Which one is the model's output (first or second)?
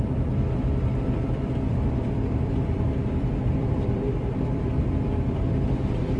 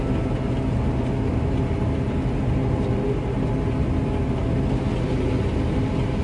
first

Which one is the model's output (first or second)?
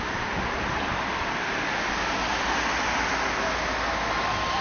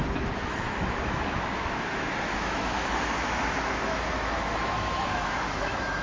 second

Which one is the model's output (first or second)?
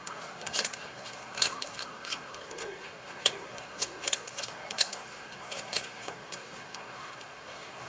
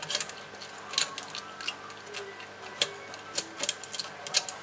first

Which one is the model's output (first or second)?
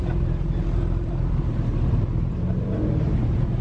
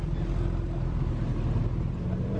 first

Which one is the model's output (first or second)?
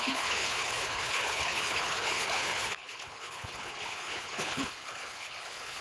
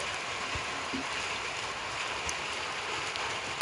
first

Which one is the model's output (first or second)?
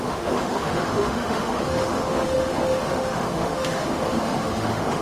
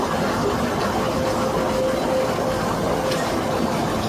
first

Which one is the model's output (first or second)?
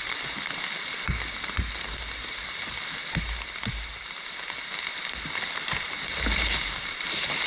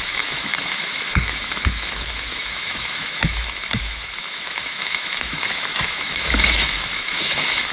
second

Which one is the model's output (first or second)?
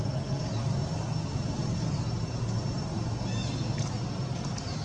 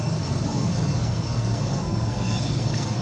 second